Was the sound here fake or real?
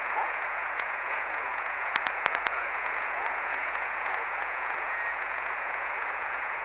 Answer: fake